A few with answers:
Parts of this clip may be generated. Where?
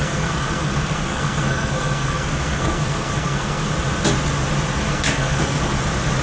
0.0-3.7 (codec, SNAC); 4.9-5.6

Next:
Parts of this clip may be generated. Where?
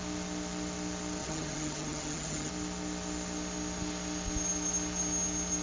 1.2-2.5 (vocoder, HiFi-GAN)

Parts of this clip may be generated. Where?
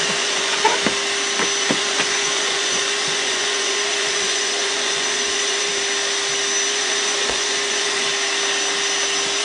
0.0-0.7 (vocoder, Vocos); 1.6-5.7; 6.7-8.1